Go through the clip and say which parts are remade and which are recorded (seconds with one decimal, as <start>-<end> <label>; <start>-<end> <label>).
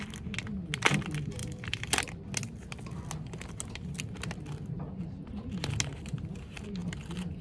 0.0-1.4 recorded; 1.4-1.9 remade; 1.9-7.4 recorded